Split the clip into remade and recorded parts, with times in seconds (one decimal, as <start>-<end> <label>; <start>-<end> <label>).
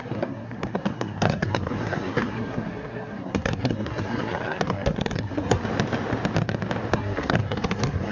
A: 0.0-5.6 remade; 5.6-6.9 recorded; 6.9-8.1 remade